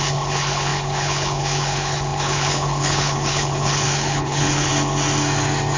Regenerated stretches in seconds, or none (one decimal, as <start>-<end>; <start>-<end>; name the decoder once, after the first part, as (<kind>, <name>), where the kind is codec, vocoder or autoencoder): 0.0-4.7 (codec, HILCodec)